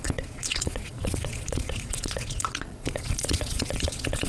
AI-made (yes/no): yes